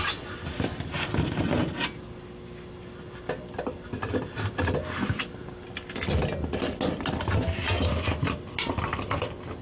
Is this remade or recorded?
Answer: recorded